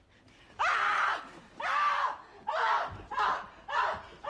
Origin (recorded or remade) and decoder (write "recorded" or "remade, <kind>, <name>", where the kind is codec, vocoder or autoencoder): recorded